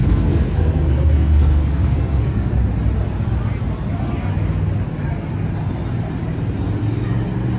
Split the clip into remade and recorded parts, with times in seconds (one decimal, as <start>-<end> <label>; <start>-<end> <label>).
0.0-2.6 remade; 2.6-7.6 recorded